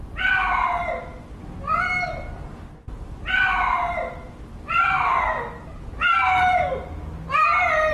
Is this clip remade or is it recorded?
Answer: recorded